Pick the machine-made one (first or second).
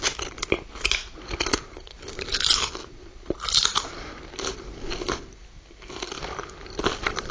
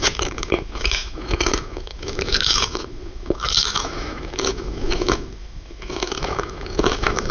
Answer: second